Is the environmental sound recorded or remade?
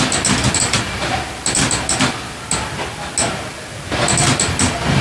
recorded